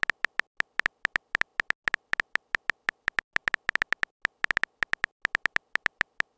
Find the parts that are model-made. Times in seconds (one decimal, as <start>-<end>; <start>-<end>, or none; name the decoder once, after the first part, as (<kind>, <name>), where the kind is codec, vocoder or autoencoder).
none